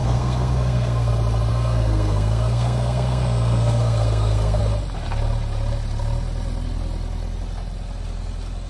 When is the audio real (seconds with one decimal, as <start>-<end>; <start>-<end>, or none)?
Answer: 1.1-1.5; 4.6-8.7